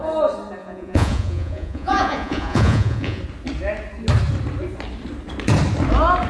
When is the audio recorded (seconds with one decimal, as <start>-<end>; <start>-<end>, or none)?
0.0-0.6; 3.2-6.3